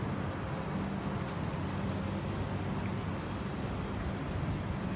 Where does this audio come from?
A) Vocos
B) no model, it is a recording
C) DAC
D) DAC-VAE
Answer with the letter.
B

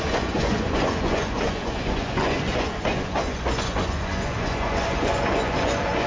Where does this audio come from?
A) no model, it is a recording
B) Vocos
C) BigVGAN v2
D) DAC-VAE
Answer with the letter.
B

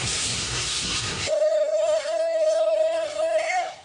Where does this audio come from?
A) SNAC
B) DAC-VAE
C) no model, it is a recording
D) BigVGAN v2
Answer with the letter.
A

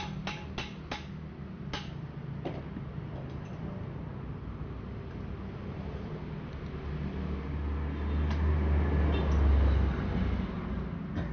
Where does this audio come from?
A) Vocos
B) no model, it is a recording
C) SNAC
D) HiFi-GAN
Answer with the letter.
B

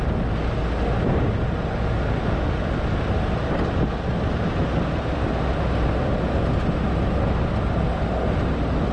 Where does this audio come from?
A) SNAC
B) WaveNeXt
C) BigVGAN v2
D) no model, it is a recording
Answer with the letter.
D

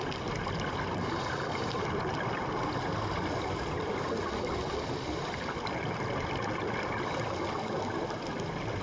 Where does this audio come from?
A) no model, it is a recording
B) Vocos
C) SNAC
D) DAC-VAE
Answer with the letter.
A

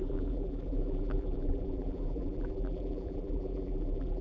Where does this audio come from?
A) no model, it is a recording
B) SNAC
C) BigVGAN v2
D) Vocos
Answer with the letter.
C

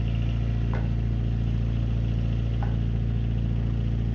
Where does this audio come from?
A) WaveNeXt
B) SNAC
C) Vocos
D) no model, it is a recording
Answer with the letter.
D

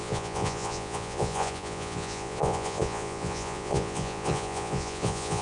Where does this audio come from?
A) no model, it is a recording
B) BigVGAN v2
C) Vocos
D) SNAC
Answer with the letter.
C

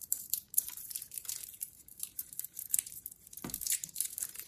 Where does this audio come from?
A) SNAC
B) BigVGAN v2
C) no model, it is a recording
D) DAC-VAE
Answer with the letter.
B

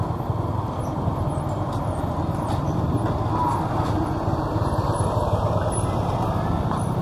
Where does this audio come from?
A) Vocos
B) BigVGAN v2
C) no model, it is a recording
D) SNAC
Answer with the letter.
C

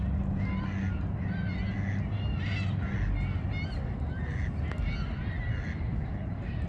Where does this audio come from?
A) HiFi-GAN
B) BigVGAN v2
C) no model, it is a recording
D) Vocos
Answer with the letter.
C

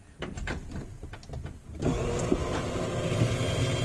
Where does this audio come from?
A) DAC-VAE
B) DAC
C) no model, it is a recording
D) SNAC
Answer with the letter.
C